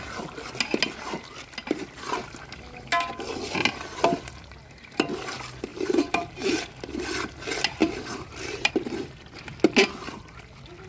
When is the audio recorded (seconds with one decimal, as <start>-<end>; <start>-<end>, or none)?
0.0-5.7; 6.9-7.8; 8.7-10.9